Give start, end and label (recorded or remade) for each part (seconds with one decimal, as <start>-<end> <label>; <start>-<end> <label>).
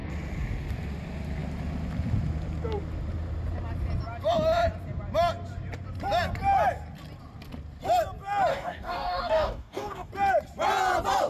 0.0-8.5 recorded; 8.5-10.1 remade; 10.1-11.3 recorded